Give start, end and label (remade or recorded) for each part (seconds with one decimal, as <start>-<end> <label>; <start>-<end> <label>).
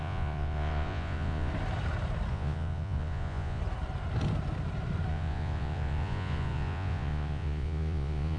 0.0-1.5 remade; 1.5-2.3 recorded; 2.3-3.6 remade; 3.6-5.1 recorded; 5.1-8.4 remade